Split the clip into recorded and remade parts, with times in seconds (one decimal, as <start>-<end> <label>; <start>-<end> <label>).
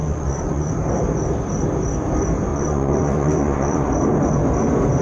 0.0-0.7 remade; 0.7-2.5 recorded; 2.5-3.9 remade; 3.9-5.0 recorded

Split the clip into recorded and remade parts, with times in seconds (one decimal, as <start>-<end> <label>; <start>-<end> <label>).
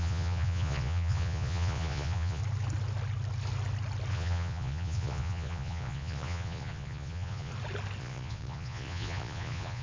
0.0-2.4 remade; 2.4-4.1 recorded; 4.1-7.5 remade; 7.5-8.0 recorded; 8.0-9.8 remade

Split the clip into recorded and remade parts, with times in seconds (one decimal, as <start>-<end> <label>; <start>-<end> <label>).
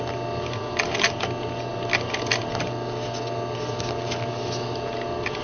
0.0-5.4 recorded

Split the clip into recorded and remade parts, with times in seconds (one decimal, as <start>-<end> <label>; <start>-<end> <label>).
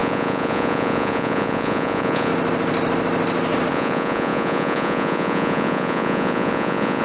0.0-2.3 remade; 2.3-3.7 recorded; 3.7-7.0 remade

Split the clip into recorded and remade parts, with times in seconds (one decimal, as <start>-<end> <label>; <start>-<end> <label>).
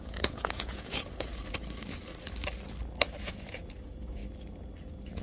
0.0-1.3 remade; 1.3-3.3 recorded; 3.3-4.2 remade; 4.2-5.2 recorded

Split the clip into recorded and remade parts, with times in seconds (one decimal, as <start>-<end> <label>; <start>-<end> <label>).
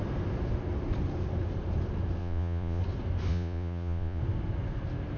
0.0-2.2 recorded; 2.2-2.8 remade; 2.8-3.3 recorded; 3.3-4.2 remade; 4.2-5.2 recorded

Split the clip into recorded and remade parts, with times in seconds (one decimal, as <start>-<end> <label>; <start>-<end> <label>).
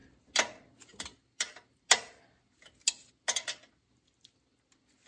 0.0-5.1 recorded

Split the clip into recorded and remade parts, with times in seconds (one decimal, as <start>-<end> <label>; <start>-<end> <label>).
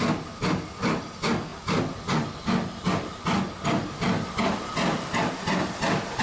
0.0-6.2 recorded